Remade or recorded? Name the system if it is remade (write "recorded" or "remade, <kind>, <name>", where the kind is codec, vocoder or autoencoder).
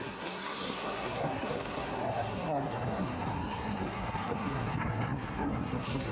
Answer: remade, codec, SNAC